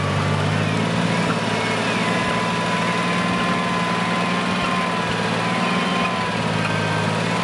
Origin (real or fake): real